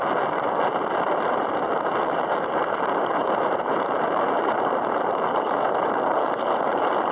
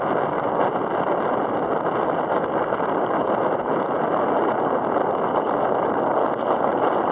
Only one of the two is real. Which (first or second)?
second